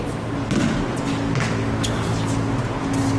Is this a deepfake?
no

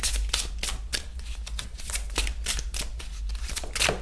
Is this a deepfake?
no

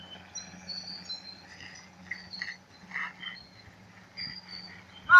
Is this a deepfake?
no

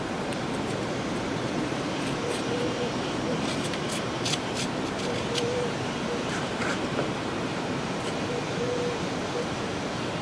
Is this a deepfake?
yes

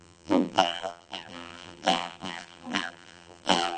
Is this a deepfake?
yes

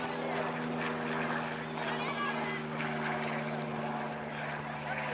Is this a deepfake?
no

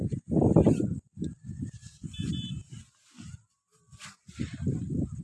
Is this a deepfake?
no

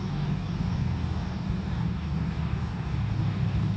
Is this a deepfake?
yes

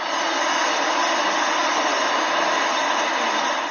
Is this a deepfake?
no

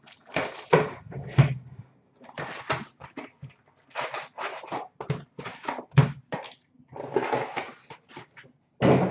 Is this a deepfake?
no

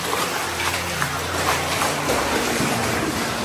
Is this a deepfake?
yes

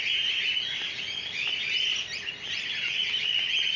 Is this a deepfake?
no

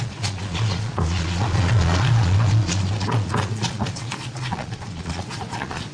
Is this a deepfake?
yes